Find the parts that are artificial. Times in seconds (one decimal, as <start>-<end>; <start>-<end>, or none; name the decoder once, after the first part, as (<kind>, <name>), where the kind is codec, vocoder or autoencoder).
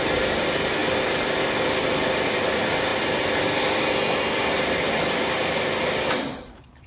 none